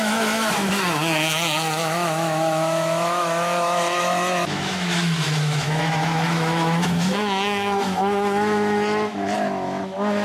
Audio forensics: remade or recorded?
remade